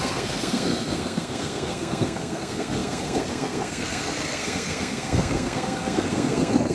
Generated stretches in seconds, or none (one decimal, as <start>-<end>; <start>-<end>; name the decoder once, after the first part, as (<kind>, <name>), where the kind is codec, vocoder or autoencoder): 0.0-6.7 (codec, SNAC)